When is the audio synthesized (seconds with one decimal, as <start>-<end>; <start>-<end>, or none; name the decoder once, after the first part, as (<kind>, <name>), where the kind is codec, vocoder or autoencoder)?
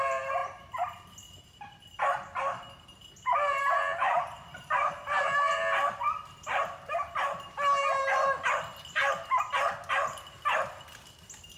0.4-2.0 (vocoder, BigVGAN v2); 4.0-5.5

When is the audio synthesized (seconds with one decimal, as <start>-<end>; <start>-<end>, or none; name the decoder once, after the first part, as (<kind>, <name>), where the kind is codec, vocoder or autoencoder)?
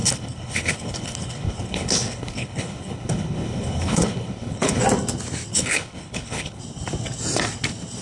0.0-4.8 (codec, HILCodec); 5.5-6.6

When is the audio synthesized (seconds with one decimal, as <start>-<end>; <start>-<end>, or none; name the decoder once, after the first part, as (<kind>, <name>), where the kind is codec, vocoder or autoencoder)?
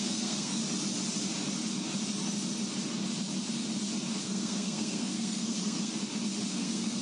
0.0-0.6 (codec, SNAC); 4.2-5.9; 6.5-7.0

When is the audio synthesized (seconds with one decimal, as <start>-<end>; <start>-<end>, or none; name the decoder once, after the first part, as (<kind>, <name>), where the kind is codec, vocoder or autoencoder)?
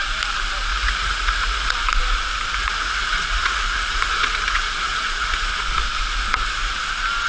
0.7-1.7 (vocoder, Vocos); 2.6-5.6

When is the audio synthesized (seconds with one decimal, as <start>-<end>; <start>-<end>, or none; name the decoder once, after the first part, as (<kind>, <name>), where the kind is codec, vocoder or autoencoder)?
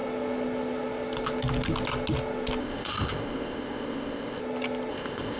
2.6-4.4 (codec, ZipCodec); 4.9-5.4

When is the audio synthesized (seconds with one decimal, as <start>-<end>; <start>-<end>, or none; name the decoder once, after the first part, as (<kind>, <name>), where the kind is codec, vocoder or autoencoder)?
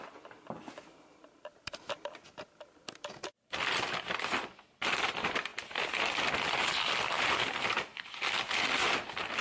none